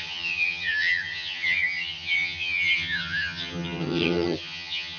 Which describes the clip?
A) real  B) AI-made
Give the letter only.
B